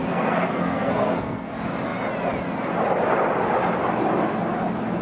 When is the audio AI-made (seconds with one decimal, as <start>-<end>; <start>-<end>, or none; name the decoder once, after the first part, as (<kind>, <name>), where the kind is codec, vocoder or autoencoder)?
0.0-1.5 (codec, SNAC)